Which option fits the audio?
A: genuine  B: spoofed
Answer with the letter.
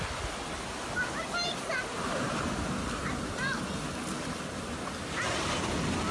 A